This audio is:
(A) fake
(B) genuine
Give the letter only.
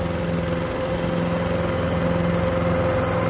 B